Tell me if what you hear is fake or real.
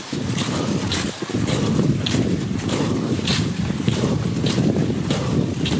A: real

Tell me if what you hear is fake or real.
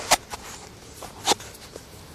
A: fake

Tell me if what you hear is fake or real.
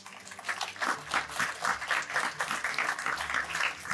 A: real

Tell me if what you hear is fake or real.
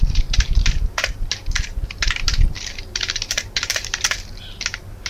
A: fake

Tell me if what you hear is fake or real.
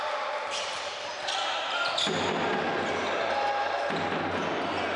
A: real